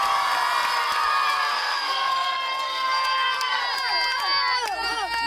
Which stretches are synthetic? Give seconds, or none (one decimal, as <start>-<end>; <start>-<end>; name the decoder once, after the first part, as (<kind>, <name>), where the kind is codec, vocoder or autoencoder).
1.5-3.6 (codec, SNAC)